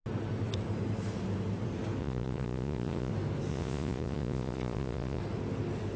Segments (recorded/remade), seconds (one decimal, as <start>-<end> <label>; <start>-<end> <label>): 0.0-2.0 recorded; 2.0-3.1 remade; 3.1-3.5 recorded; 3.5-5.2 remade; 5.2-6.0 recorded